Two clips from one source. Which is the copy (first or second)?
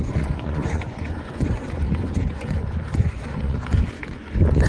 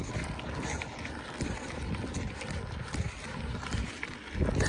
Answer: first